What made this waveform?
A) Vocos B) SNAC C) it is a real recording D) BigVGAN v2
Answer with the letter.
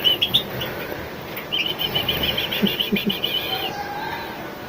C